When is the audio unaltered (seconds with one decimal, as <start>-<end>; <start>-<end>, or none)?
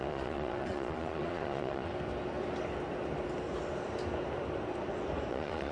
1.9-5.3